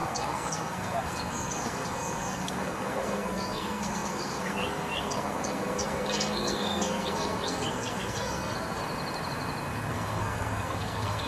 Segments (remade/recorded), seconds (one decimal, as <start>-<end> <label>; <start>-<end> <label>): 0.0-8.8 remade; 8.8-9.9 recorded; 9.9-11.3 remade